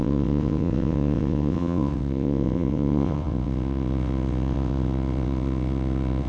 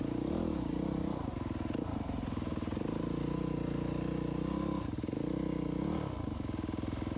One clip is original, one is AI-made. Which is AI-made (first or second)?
first